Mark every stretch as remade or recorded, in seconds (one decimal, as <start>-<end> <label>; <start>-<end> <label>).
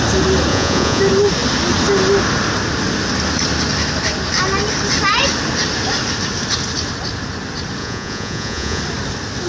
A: 0.0-0.5 recorded; 0.5-1.0 remade; 1.0-7.8 recorded; 7.8-8.8 remade; 8.8-9.5 recorded